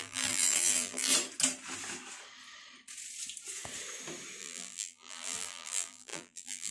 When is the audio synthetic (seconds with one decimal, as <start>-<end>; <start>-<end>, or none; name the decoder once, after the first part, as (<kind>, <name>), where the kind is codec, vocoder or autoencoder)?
0.0-1.1 (vocoder, BigVGAN v2); 4.4-6.7